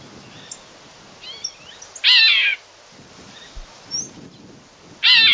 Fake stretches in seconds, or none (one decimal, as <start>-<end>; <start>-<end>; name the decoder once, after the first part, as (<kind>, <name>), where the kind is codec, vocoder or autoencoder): none